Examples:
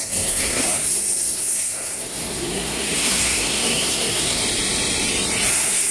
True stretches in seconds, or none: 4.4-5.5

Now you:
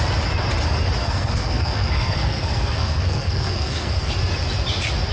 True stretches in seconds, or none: 0.0-1.0; 4.1-5.1

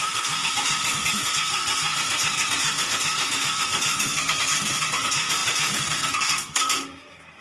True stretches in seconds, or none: none

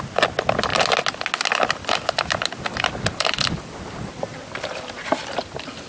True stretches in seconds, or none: 0.0-5.9

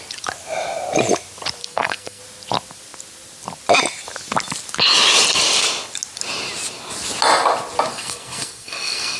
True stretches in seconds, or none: 0.0-1.6; 2.2-7.9

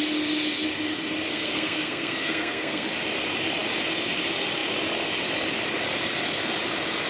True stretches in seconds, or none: 0.0-1.3; 2.9-7.1

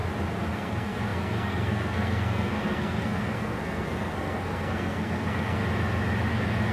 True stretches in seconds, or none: 0.0-0.5; 5.6-6.3